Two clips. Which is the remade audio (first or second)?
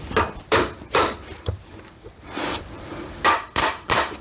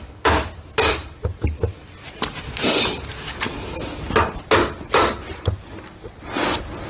first